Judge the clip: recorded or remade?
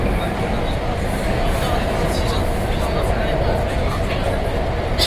recorded